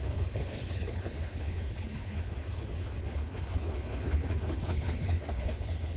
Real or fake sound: fake